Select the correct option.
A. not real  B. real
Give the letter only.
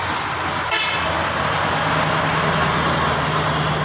B